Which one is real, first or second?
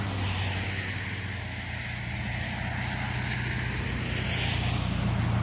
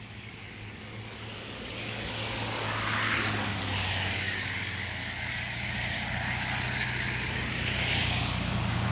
first